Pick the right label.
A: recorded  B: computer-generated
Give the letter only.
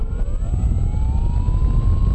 A